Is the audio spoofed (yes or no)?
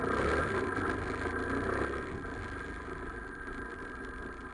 no